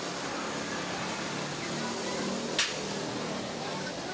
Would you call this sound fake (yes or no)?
no